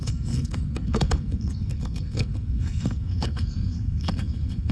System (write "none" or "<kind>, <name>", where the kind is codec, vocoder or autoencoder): codec, SNAC